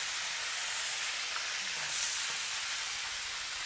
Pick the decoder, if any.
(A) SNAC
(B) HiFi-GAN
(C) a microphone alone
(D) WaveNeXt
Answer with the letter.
C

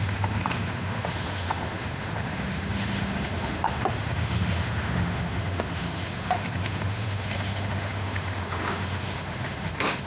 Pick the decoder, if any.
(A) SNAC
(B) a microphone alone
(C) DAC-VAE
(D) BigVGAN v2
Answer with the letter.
C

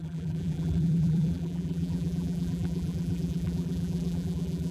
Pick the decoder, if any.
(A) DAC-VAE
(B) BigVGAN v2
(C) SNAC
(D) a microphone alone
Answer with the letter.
B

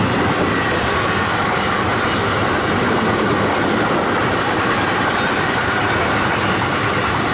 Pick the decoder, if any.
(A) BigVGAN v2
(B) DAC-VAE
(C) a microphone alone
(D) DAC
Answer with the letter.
C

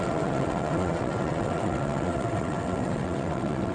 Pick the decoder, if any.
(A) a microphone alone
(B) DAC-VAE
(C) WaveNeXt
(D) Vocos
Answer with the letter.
C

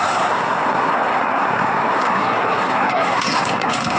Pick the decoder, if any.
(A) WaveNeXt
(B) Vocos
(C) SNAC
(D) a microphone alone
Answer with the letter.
C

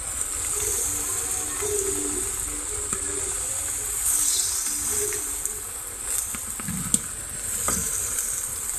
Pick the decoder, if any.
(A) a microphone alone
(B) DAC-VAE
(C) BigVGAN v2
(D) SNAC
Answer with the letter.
C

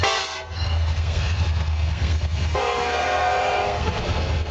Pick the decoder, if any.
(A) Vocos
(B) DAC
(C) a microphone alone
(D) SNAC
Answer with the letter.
D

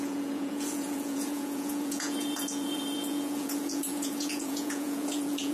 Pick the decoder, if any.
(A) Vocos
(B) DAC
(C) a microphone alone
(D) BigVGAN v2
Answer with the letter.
A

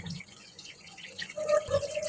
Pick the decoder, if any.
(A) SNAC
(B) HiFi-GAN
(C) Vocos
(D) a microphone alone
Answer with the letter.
C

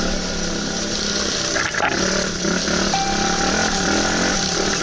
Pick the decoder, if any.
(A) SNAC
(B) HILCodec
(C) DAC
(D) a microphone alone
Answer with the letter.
D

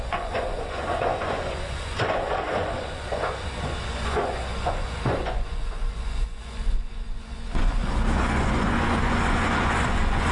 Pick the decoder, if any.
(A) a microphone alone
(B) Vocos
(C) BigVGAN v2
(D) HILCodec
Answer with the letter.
B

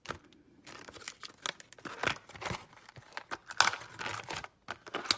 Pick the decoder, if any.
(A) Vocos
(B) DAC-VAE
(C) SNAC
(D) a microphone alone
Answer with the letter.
D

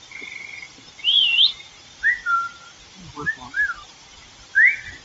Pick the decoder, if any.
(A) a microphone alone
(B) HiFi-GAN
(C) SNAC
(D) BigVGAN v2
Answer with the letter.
A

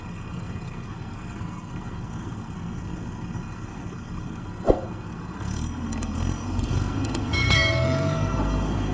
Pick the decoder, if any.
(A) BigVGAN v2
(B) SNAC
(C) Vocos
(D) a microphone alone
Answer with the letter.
B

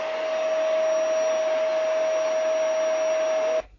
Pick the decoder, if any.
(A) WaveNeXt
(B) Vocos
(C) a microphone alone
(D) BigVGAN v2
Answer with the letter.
C